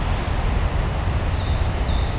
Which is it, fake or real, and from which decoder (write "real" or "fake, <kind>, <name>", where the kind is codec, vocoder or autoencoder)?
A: real